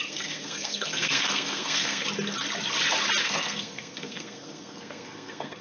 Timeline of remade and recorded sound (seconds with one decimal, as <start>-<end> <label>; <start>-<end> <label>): 0.0-2.0 remade; 2.0-3.2 recorded; 3.2-5.6 remade